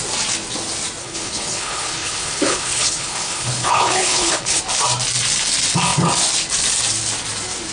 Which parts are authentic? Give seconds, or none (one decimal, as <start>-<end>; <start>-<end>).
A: 0.0-1.0; 4.6-7.7

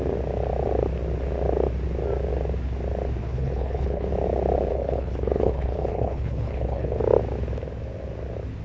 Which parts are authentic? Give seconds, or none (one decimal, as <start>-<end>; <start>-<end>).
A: 0.0-3.2; 4.1-4.7; 7.0-8.6